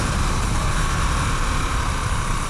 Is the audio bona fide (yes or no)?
no